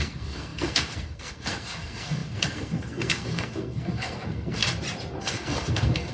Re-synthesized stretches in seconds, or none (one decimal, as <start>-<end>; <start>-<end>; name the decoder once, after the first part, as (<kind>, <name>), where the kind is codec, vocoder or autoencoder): 0.0-4.6 (codec, SNAC); 5.2-6.1